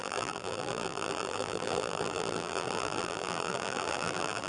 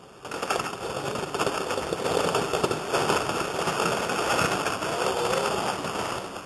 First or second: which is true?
second